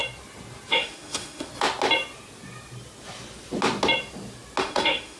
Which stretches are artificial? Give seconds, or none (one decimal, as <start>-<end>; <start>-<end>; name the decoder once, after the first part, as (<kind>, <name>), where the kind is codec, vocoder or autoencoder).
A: 0.7-1.5 (autoencoder, DAC-VAE); 4.6-5.2